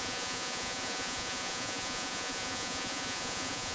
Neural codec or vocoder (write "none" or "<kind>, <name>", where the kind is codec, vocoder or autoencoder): vocoder, Vocos